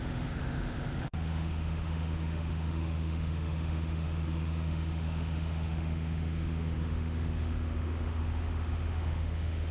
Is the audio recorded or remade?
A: remade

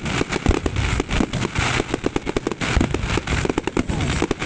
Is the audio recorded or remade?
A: recorded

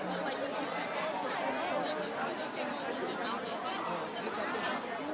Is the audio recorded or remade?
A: recorded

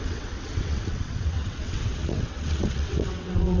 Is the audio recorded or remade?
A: remade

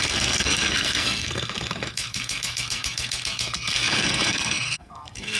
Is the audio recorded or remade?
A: remade